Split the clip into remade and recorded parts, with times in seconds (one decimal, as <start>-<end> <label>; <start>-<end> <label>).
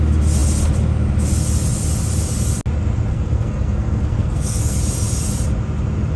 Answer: 0.0-3.1 recorded; 3.1-4.8 remade; 4.8-6.2 recorded